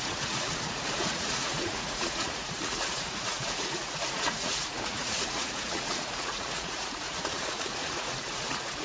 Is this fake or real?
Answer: fake